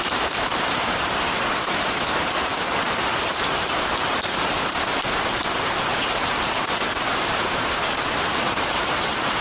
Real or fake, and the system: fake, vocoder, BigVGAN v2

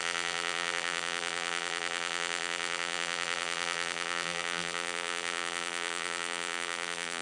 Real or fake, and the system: fake, vocoder, BigVGAN v2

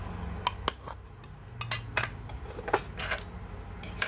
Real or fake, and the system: real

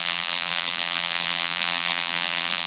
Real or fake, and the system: fake, vocoder, BigVGAN v2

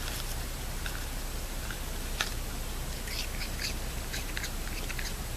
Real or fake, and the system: real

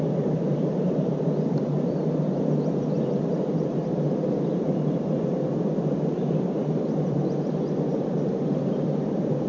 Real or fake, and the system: fake, vocoder, BigVGAN v2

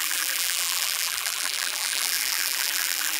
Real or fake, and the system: fake, vocoder, BigVGAN v2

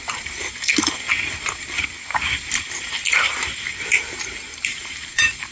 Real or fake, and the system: fake, vocoder, BigVGAN v2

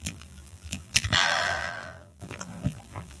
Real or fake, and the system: fake, vocoder, BigVGAN v2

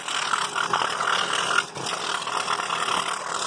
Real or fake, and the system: real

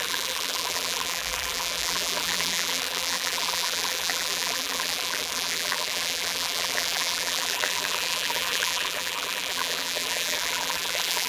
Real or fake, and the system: fake, vocoder, BigVGAN v2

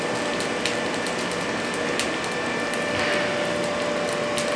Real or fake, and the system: real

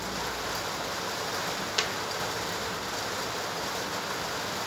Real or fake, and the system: real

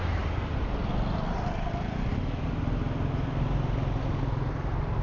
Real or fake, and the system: real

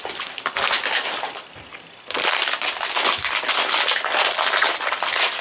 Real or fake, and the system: fake, vocoder, BigVGAN v2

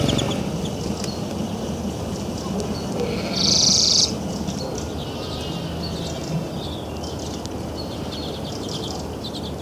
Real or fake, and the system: real